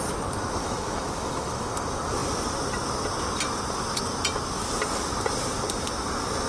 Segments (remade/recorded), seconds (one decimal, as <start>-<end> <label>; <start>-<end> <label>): 0.0-0.6 recorded; 0.6-1.7 remade; 1.7-6.5 recorded